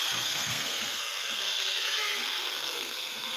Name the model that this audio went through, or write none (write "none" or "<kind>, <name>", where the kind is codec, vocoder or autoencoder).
codec, SNAC